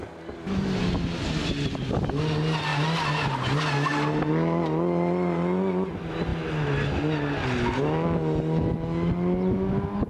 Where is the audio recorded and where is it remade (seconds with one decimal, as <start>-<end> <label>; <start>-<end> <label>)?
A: 0.0-10.1 recorded